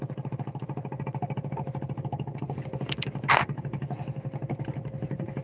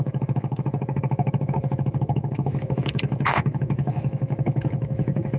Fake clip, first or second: second